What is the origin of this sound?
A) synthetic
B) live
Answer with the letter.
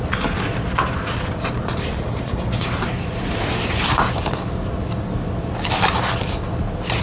B